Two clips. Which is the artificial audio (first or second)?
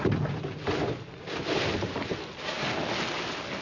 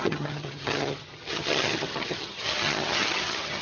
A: second